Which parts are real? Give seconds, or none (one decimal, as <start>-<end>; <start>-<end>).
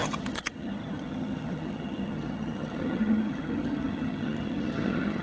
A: none